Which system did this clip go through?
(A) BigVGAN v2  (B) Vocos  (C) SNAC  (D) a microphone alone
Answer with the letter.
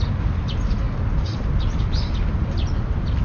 D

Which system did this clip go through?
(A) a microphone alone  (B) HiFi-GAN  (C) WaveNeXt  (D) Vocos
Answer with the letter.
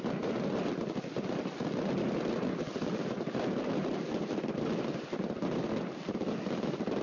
A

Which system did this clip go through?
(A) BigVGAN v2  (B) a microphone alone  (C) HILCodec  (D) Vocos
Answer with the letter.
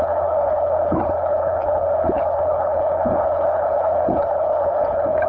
C